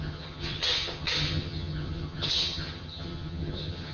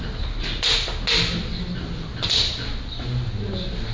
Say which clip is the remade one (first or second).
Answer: first